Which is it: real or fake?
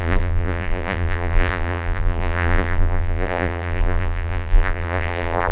fake